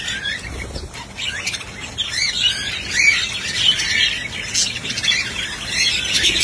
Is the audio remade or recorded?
recorded